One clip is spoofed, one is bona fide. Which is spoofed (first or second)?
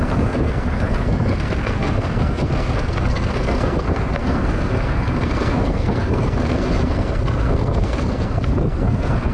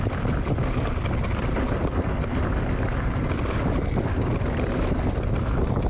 first